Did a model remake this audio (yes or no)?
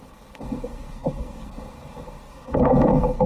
yes